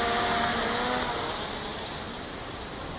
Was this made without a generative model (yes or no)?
yes